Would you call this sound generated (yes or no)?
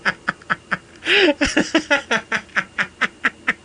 no